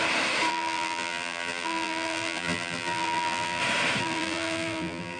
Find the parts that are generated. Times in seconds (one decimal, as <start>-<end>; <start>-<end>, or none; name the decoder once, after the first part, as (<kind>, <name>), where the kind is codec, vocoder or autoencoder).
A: 0.5-3.6 (vocoder, BigVGAN v2); 4.0-5.2